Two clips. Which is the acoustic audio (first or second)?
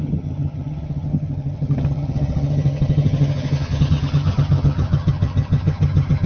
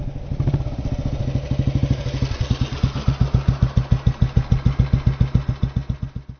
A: second